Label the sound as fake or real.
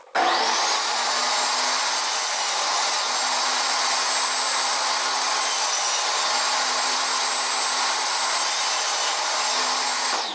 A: real